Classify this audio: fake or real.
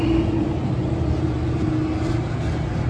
real